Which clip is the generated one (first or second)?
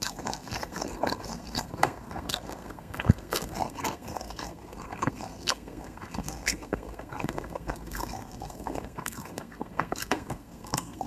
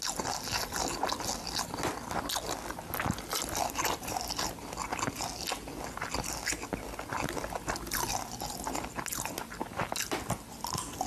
first